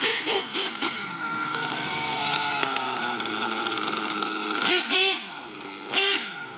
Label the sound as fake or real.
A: fake